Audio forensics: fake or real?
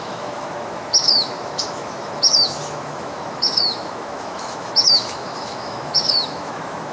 fake